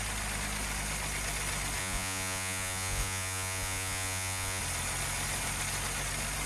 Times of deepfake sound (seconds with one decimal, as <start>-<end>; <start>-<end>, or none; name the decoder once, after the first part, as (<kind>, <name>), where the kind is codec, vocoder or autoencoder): 1.8-4.6 (vocoder, Vocos)